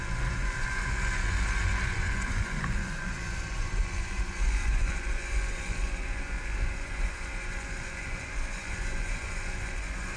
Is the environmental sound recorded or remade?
remade